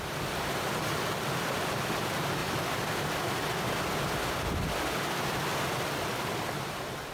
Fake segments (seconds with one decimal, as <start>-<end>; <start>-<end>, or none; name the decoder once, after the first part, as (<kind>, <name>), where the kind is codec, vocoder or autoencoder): none